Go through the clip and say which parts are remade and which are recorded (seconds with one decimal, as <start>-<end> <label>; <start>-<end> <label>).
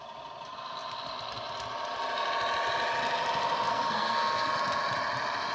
0.0-3.7 recorded; 3.7-4.5 remade; 4.5-5.5 recorded